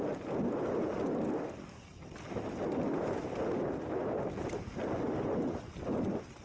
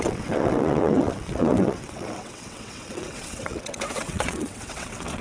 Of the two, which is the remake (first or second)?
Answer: second